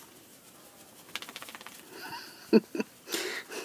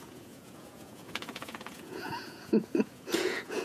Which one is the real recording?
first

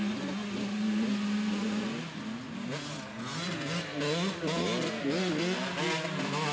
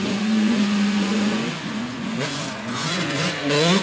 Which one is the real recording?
first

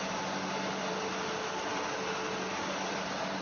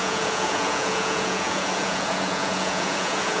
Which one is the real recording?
first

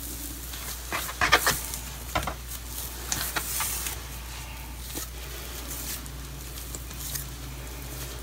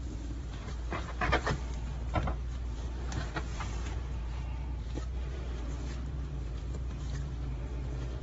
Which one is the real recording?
first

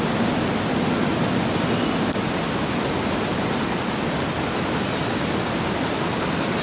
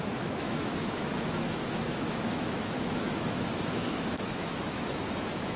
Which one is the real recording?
first